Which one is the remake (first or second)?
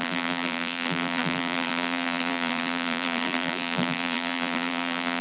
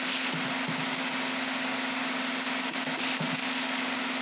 first